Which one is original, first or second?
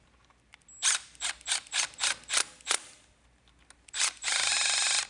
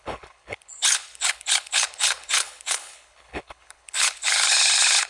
first